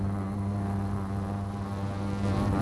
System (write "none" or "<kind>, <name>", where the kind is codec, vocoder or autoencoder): none